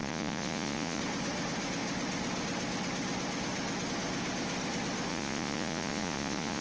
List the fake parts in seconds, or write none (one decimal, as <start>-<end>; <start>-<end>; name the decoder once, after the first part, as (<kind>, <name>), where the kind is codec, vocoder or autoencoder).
0.0-1.0 (vocoder, Vocos); 5.1-6.6